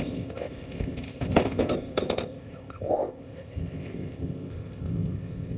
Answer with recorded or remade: remade